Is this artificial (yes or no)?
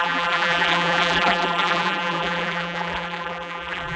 yes